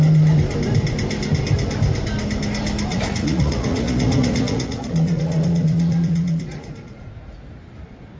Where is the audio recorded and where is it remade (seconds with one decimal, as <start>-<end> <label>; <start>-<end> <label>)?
0.0-2.9 recorded; 2.9-7.1 remade; 7.1-8.2 recorded